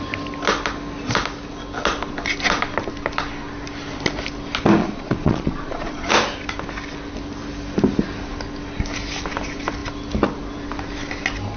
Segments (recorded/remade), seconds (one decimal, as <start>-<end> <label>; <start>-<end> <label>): 0.0-4.8 recorded; 4.8-6.1 remade; 6.1-11.6 recorded